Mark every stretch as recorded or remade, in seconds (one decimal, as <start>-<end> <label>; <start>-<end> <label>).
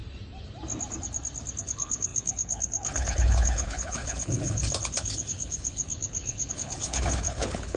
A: 0.0-1.6 recorded; 1.6-7.8 remade